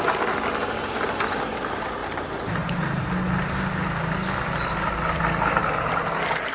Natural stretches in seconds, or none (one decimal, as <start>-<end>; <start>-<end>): 0.0-2.0; 3.0-6.5